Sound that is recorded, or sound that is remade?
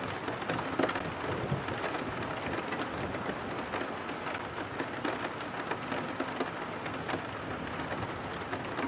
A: recorded